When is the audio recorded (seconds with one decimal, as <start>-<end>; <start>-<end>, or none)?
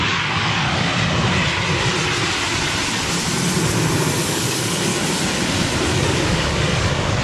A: 0.9-4.2; 4.9-5.9